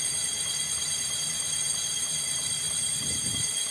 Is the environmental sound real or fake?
real